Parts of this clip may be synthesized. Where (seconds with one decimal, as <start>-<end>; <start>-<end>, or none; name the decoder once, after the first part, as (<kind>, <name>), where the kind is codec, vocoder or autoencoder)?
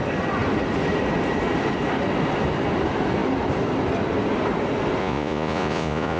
5.0-6.2 (vocoder, Vocos)